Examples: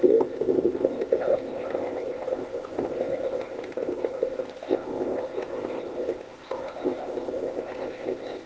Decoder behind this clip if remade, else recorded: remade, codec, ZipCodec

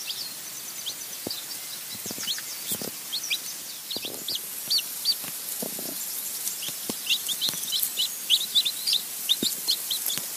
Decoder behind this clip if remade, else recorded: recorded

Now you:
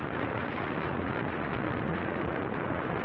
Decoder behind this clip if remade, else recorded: remade, vocoder, Vocos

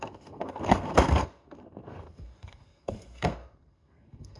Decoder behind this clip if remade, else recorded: remade, codec, SNAC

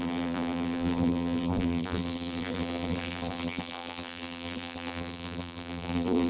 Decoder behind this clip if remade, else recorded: remade, vocoder, BigVGAN v2